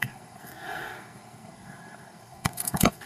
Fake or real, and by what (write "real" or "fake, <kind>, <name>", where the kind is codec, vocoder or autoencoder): fake, codec, SNAC